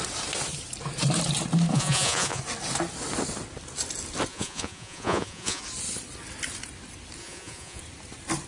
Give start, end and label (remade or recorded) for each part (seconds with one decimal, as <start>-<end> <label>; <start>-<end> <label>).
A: 0.0-1.7 recorded; 1.7-2.4 remade; 2.4-4.3 recorded; 4.3-5.6 remade; 5.6-7.2 recorded; 7.2-7.8 remade; 7.8-8.5 recorded